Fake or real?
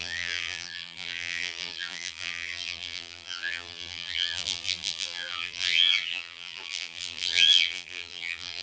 fake